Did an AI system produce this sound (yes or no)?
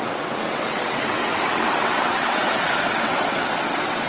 yes